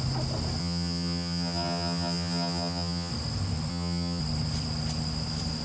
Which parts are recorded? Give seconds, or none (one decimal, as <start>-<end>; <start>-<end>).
0.0-0.6; 3.1-3.7; 4.2-5.6